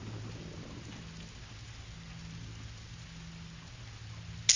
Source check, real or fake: real